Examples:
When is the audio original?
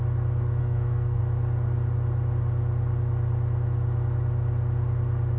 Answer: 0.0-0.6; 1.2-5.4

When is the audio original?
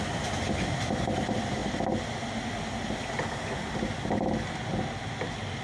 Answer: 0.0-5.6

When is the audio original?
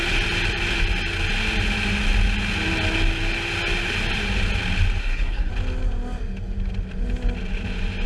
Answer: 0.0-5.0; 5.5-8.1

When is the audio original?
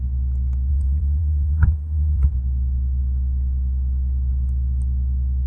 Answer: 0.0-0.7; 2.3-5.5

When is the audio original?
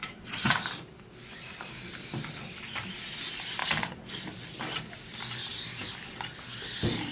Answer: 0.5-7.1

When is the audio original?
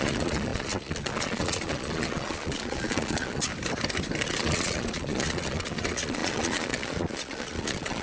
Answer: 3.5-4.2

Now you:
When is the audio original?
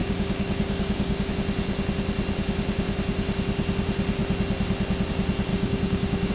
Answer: 1.3-5.5